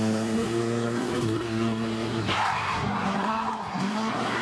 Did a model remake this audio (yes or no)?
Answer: yes